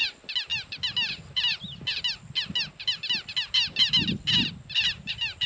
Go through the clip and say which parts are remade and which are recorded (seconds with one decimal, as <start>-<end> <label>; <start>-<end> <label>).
0.0-5.5 recorded